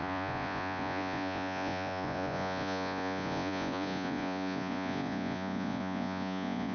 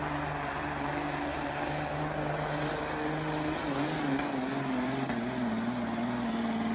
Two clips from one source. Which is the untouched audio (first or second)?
second